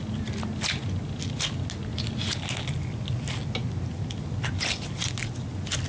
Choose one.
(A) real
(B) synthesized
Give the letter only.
A